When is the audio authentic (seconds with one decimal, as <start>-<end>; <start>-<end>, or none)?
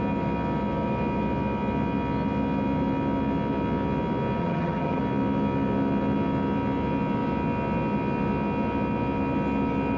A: 0.0-4.4; 5.0-10.0